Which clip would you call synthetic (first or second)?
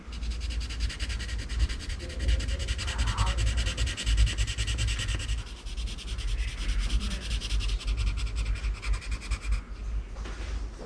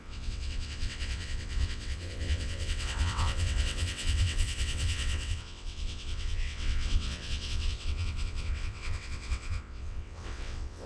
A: second